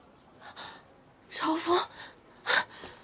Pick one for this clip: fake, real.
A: fake